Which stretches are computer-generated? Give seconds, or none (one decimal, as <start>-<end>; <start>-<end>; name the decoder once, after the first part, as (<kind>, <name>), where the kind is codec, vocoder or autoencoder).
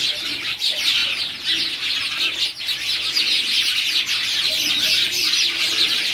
0.0-1.0 (vocoder, BigVGAN v2); 4.7-6.1